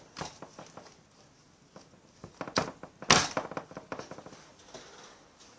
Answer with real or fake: real